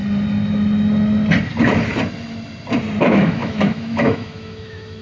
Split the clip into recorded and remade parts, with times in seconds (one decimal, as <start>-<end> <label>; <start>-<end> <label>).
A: 0.0-3.0 recorded; 3.0-5.0 remade